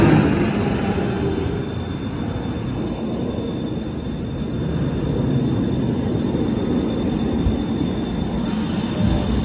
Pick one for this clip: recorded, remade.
recorded